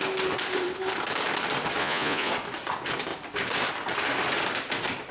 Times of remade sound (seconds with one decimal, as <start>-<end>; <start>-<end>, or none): 1.8-2.3